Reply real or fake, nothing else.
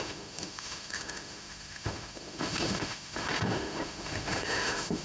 fake